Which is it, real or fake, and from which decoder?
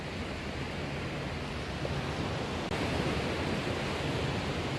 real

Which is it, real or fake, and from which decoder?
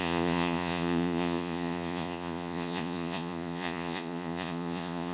fake, vocoder, Vocos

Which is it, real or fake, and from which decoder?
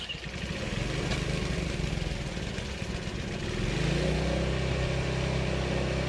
real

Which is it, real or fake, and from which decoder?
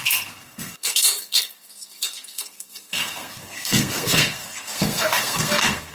fake, codec, SNAC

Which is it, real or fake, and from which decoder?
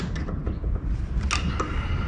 real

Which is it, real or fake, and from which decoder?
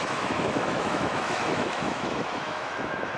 fake, autoencoder, DAC-VAE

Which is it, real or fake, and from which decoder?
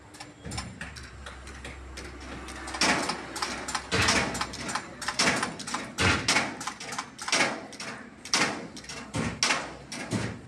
real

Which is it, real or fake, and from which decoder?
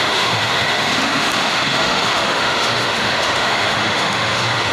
fake, autoencoder, DAC-VAE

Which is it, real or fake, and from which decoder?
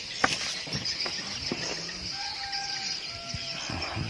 real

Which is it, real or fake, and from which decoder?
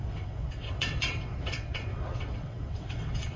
fake, vocoder, WaveNeXt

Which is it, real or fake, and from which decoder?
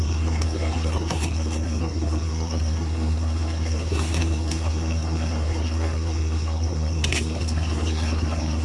fake, codec, SNAC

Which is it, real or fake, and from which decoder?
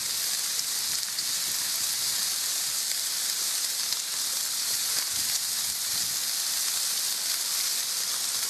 real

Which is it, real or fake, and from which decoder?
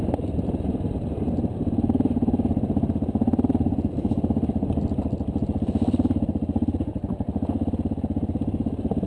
real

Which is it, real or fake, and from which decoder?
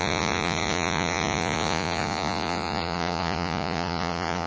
fake, vocoder, Vocos